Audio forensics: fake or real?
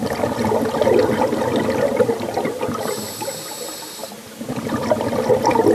real